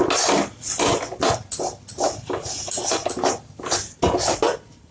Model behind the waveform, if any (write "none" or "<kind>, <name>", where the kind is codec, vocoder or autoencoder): none